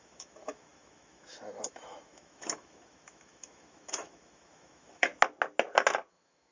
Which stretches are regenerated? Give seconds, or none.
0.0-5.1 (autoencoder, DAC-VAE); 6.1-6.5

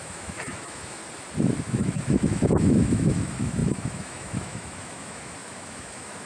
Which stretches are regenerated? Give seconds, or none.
0.0-1.0 (autoencoder, DAC-VAE); 1.6-6.3

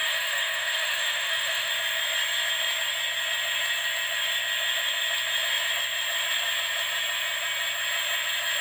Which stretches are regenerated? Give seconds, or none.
0.0-1.7 (autoencoder, DAC-VAE)

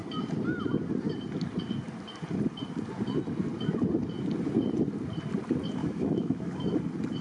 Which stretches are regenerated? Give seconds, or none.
5.8-6.8 (autoencoder, DAC-VAE)

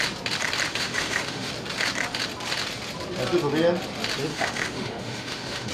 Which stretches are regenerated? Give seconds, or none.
0.7-1.5 (autoencoder, DAC-VAE); 4.3-5.7

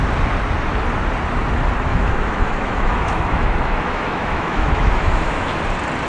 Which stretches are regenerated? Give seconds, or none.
1.9-5.6 (autoencoder, DAC-VAE)